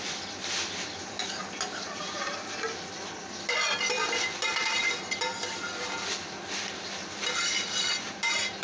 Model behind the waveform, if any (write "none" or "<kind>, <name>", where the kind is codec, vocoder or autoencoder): vocoder, BigVGAN v2